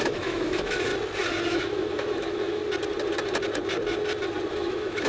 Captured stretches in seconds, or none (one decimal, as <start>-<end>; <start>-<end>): 0.9-1.5; 2.6-4.5